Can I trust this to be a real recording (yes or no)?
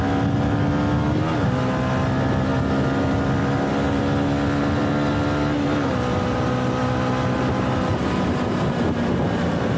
yes